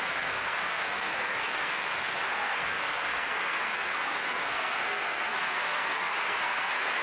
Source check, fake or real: fake